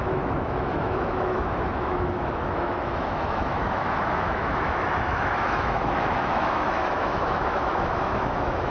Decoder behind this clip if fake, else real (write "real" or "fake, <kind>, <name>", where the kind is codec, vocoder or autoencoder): fake, autoencoder, DAC-VAE